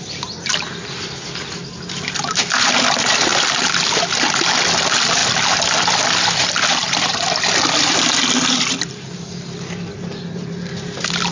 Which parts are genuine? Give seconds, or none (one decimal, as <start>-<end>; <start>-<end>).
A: 0.0-11.3